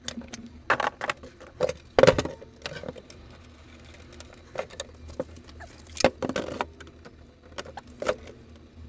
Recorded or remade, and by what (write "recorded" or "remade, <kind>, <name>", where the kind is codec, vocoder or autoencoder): recorded